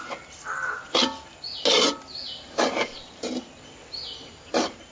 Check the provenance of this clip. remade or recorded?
recorded